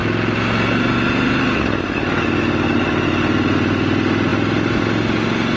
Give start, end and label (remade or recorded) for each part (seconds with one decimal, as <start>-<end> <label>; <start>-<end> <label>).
0.0-5.6 recorded